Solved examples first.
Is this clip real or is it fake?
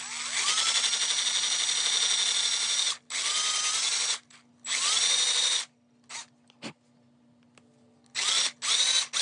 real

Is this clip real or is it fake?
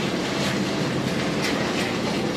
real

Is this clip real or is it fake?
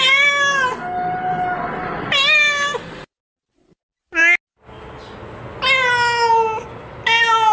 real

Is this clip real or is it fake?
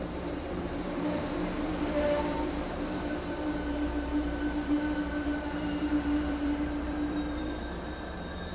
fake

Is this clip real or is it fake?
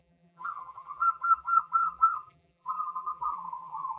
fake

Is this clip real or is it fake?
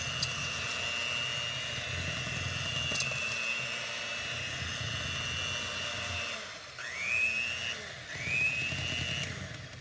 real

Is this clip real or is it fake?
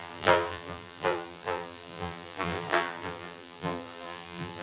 fake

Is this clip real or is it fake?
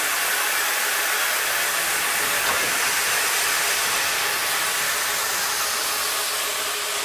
real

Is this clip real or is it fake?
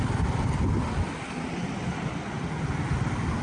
fake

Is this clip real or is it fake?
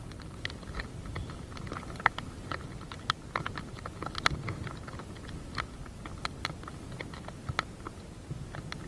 real